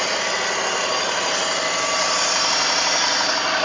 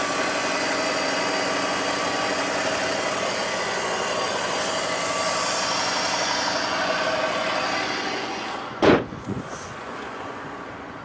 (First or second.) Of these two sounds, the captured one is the first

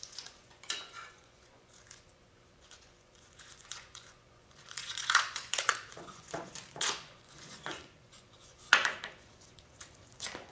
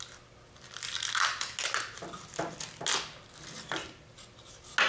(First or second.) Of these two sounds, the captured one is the second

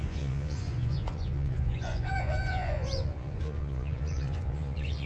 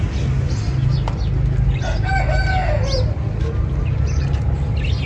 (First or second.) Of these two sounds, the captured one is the second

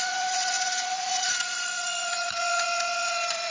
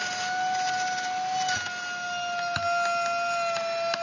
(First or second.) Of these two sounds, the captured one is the second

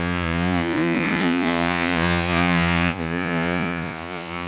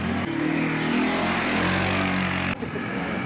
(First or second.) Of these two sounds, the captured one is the second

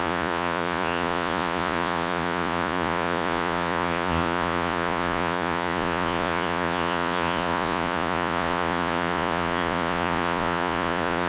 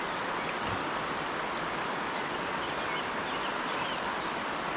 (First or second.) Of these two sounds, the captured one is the second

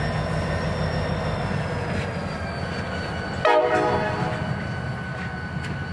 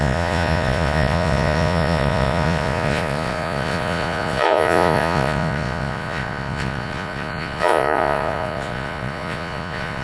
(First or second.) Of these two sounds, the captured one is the first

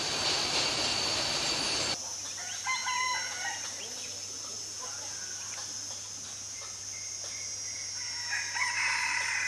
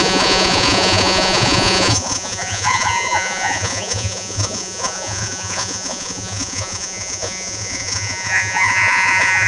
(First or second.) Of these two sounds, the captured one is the first